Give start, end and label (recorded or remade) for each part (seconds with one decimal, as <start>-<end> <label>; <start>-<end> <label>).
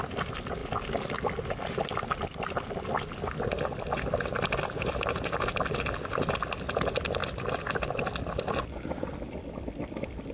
0.0-10.3 recorded